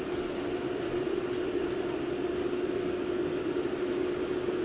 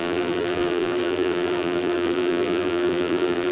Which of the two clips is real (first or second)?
first